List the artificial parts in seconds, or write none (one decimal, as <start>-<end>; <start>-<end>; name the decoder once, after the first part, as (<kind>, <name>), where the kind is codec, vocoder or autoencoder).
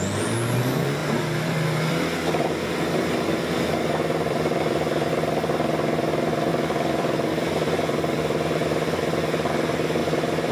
1.0-5.1 (vocoder, BigVGAN v2); 6.5-9.0; 10.0-10.5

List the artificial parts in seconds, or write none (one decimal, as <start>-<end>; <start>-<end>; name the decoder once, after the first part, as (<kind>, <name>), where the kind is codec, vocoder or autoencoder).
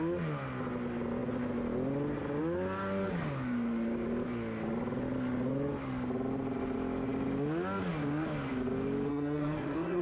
9.1-10.0 (codec, SNAC)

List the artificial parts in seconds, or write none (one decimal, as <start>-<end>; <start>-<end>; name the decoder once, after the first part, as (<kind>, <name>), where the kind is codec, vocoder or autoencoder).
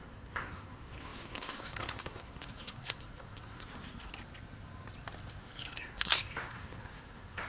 0.0-4.1 (codec, SNAC); 5.4-7.5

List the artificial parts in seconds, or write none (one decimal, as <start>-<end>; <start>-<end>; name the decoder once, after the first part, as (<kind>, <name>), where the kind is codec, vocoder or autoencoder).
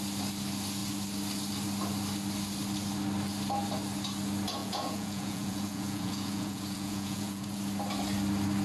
4.6-7.6 (vocoder, Vocos)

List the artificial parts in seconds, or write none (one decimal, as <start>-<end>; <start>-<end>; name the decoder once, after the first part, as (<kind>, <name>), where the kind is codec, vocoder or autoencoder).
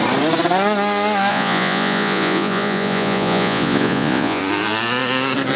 1.3-4.4 (vocoder, Vocos)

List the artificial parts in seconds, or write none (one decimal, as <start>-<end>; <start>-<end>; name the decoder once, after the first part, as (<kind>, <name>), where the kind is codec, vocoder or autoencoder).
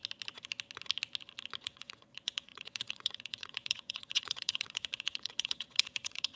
1.6-6.4 (vocoder, WaveNeXt)